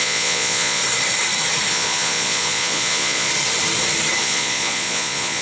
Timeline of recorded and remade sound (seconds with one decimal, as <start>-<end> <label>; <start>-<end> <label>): 0.0-0.8 remade; 0.8-1.7 recorded; 1.7-3.3 remade; 3.3-4.2 recorded; 4.2-5.4 remade